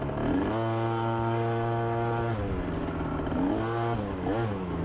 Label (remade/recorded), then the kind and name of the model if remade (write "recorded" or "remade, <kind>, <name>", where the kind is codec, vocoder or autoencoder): recorded